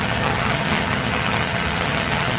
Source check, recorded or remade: remade